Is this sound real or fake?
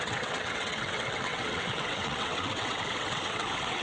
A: fake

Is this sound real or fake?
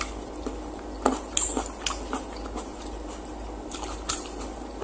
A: real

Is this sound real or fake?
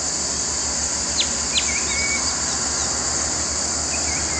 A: real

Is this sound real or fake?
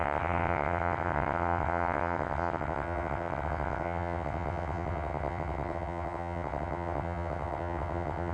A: fake